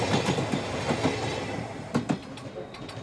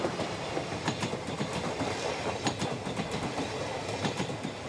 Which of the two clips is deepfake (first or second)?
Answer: second